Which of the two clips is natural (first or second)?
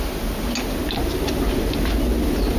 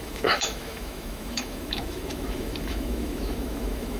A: first